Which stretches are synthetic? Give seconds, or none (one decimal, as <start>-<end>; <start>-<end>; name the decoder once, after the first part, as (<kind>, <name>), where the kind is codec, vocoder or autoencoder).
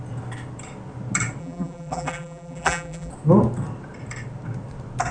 1.4-3.1 (vocoder, BigVGAN v2)